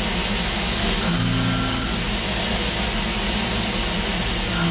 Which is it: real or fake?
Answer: real